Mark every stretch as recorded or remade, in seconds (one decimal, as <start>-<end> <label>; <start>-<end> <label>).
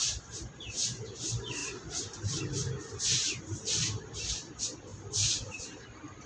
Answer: 0.0-1.6 remade; 1.6-3.4 recorded; 3.4-6.3 remade